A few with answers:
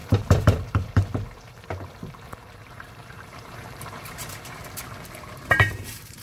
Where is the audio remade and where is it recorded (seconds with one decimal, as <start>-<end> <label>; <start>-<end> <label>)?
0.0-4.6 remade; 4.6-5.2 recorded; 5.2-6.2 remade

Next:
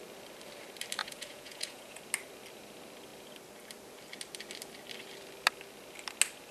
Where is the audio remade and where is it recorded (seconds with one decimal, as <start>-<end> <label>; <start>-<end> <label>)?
0.0-1.0 recorded; 1.0-2.0 remade; 2.0-6.5 recorded

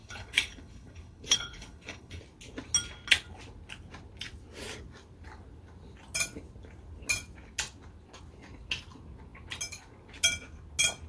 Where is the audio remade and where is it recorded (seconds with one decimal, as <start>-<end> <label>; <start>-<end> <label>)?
0.0-2.2 remade; 2.2-11.1 recorded

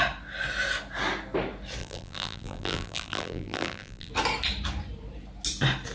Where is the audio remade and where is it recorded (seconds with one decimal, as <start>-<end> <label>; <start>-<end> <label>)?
0.0-1.8 recorded; 1.8-4.1 remade; 4.1-5.9 recorded

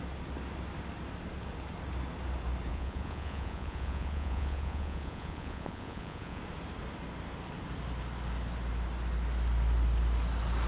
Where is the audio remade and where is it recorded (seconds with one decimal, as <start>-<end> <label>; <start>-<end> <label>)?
0.0-2.7 recorded; 2.7-6.4 remade; 6.4-10.7 recorded

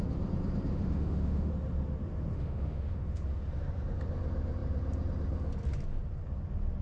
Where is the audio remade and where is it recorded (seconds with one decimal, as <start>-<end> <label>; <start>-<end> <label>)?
0.0-0.7 recorded; 0.7-1.5 remade; 1.5-2.3 recorded; 2.3-3.2 remade; 3.2-6.8 recorded

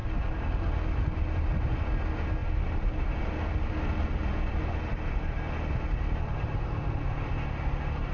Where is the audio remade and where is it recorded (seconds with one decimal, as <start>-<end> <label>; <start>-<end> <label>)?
0.0-8.1 recorded

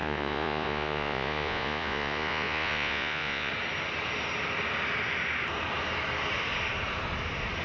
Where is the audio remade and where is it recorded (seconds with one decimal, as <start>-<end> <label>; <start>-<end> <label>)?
0.0-3.5 remade; 3.5-7.6 recorded